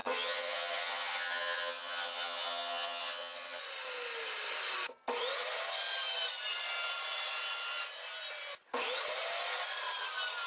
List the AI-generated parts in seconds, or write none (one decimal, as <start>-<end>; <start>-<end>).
0.0-3.6